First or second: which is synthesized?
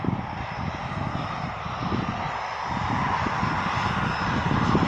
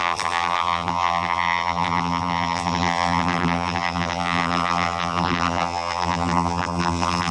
second